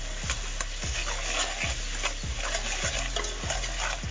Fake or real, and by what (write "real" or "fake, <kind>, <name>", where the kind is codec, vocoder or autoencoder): real